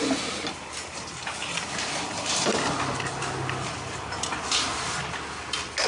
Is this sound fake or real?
real